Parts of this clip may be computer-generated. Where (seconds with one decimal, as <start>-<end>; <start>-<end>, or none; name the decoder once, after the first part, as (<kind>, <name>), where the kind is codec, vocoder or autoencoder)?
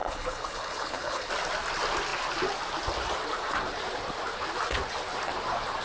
0.0-1.3 (codec, HILCodec)